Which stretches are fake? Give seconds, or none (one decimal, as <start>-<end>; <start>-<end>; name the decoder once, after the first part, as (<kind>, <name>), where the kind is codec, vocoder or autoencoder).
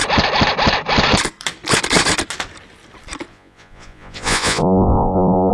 3.3-5.5 (vocoder, Vocos)